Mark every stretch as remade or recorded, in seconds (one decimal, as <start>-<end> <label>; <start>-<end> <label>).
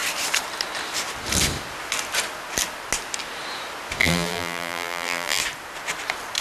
0.0-4.0 recorded; 4.0-5.4 remade; 5.4-6.4 recorded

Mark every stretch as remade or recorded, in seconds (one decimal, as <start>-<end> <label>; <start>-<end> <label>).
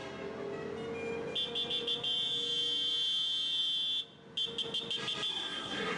0.0-5.3 recorded; 5.3-6.0 remade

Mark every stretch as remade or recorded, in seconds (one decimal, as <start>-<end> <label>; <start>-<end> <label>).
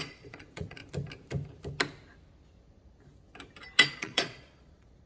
0.0-0.8 remade; 0.8-3.9 recorded; 3.9-5.1 remade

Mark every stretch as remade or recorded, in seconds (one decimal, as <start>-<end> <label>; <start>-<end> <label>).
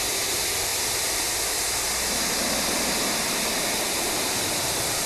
0.0-5.1 recorded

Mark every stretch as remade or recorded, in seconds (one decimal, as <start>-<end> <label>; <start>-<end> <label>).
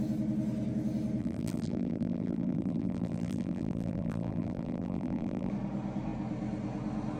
0.0-1.2 recorded; 1.2-5.5 remade; 5.5-7.2 recorded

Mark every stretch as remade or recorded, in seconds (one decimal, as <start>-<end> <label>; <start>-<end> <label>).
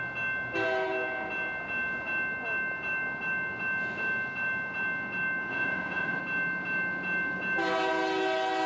0.0-5.5 recorded; 5.5-6.2 remade; 6.2-8.7 recorded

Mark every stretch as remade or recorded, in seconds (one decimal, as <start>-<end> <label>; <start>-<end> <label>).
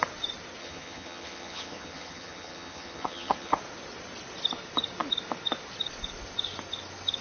0.0-0.6 recorded; 0.6-3.6 remade; 3.6-7.2 recorded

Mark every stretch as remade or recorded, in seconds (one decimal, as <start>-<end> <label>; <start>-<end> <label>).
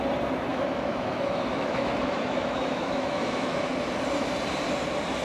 0.0-0.5 recorded; 0.5-3.6 remade; 3.6-5.2 recorded